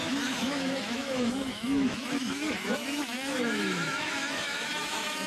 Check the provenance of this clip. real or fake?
fake